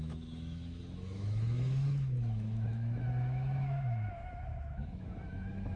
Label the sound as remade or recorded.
remade